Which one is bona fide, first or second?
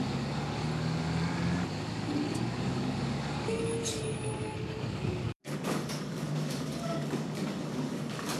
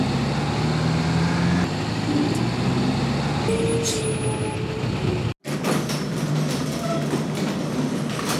second